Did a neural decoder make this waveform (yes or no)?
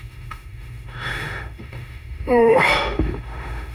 yes